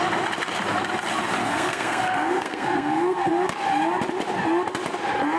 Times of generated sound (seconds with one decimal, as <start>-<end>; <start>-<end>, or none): 1.4-3.3